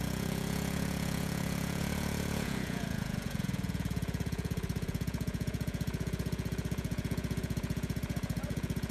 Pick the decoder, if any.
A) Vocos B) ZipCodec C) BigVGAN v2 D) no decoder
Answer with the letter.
A